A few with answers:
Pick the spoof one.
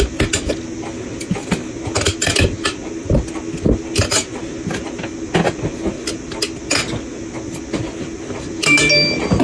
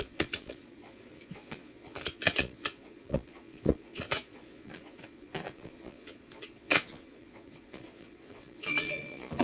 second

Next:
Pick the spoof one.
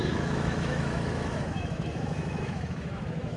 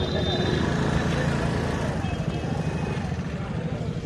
first